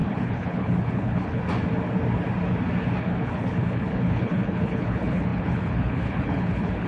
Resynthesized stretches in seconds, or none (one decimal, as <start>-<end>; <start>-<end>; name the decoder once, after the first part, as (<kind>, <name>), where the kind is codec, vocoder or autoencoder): 0.0-1.4 (codec, HILCodec); 3.0-6.9